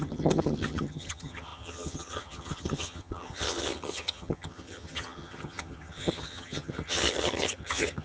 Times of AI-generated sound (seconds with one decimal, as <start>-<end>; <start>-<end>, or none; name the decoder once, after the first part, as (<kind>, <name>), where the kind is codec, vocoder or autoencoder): 0.0-8.0 (vocoder, HiFi-GAN)

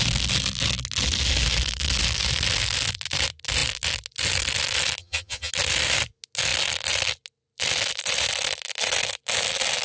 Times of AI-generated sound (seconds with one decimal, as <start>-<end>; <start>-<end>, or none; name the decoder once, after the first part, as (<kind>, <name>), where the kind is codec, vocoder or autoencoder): 5.0-5.5 (vocoder, HiFi-GAN)